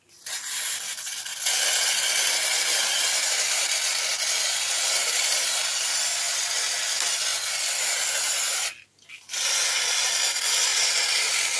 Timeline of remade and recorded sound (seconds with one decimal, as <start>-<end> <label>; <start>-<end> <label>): 0.0-1.3 recorded; 1.3-6.2 remade; 6.2-10.7 recorded; 10.7-11.6 remade